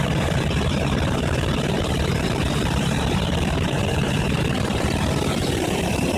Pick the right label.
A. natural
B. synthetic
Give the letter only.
B